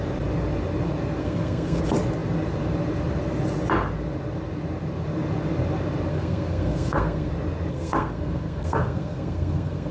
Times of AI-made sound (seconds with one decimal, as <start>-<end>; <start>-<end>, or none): 1.2-1.8; 6.1-7.3; 7.7-9.9